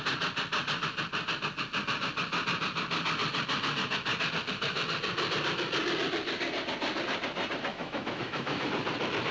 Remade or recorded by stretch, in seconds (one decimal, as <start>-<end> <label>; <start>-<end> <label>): 0.0-7.7 recorded; 7.7-8.7 remade; 8.7-9.3 recorded